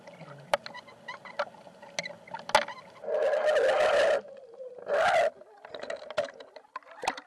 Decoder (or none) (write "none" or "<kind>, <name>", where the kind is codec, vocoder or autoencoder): none